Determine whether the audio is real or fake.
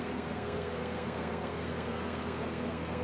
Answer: fake